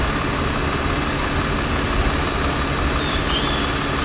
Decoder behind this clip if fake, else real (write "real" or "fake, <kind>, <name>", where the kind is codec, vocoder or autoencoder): real